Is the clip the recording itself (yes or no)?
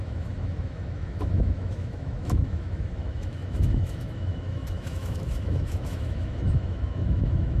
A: no